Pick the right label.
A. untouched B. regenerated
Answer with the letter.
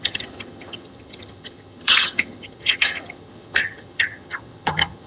B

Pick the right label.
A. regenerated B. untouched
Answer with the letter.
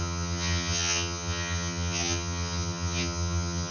A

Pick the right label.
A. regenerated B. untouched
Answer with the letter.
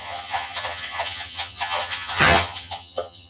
A